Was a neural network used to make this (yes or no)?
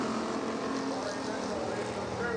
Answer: no